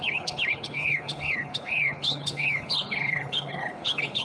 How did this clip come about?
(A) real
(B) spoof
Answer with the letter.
B